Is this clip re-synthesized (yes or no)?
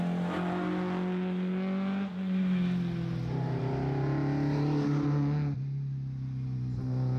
no